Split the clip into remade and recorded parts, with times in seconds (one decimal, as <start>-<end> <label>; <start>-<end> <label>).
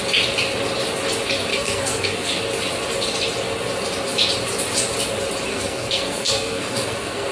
0.0-1.5 recorded; 1.5-2.4 remade; 2.4-5.5 recorded; 5.5-7.3 remade